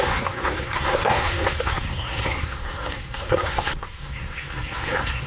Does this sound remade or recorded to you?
remade